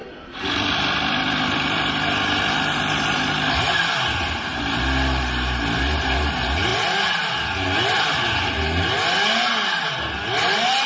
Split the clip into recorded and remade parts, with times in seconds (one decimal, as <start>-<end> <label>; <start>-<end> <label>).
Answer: 0.0-3.3 remade; 3.3-10.9 recorded